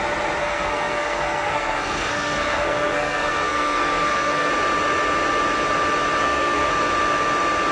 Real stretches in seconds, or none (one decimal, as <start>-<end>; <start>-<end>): 0.0-0.4; 4.5-6.2; 6.7-7.7